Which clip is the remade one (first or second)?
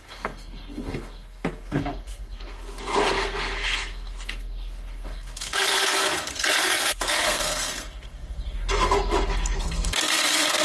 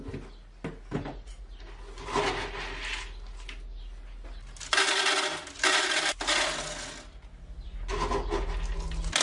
first